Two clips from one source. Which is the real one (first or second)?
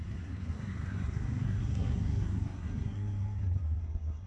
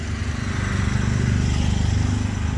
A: second